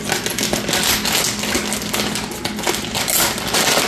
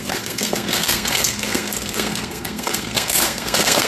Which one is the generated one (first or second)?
second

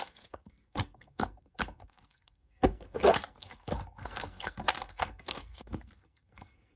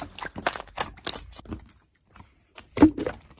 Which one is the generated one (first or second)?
first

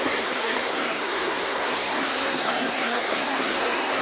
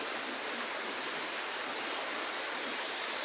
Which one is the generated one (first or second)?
first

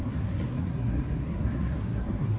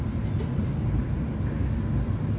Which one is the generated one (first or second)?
first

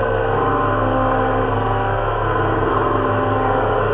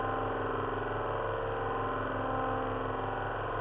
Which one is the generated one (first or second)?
first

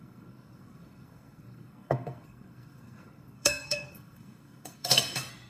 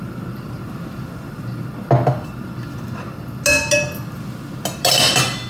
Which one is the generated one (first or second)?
first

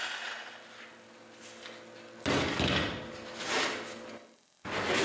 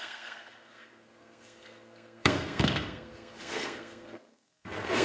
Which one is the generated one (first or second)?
second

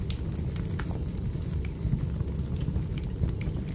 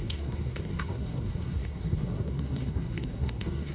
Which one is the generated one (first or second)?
second